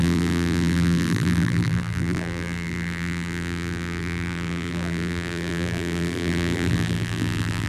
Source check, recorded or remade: remade